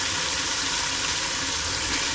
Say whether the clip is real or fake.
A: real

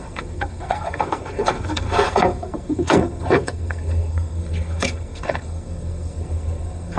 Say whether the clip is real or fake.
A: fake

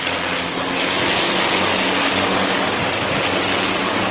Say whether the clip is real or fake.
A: real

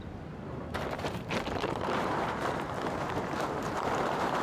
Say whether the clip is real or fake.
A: fake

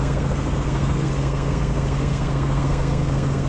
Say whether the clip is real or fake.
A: fake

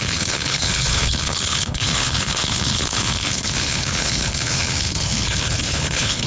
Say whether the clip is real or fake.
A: fake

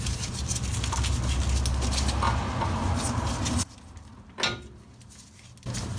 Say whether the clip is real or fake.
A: real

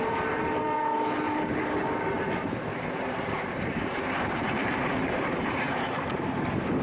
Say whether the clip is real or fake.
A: fake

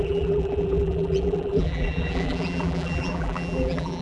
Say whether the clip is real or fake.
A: fake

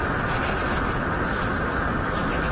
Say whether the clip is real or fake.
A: fake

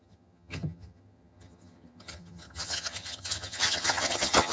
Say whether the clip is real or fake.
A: fake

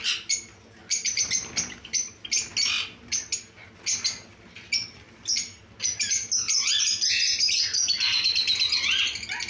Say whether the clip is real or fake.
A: real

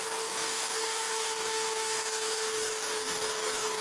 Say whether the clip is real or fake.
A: fake